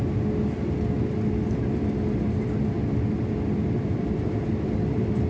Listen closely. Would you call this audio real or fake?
real